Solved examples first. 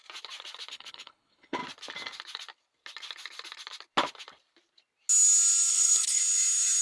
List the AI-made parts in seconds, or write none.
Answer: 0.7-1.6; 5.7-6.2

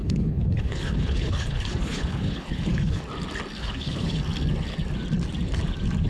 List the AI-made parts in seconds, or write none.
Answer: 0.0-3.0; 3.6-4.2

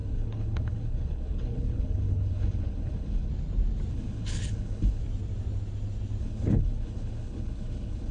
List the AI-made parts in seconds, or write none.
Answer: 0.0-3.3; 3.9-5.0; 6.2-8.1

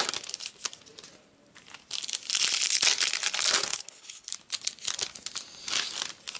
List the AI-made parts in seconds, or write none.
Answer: 3.7-4.3

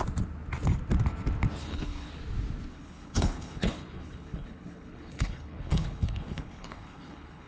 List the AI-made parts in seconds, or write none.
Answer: 1.6-2.1; 2.7-7.5

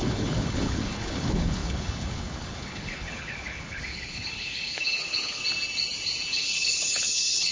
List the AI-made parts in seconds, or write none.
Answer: 0.0-5.4; 6.3-7.5

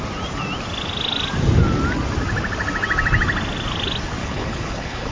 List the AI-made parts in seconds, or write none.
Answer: 4.2-5.1